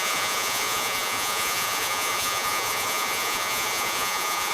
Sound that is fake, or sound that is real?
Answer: fake